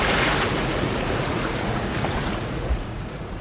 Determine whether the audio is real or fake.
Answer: fake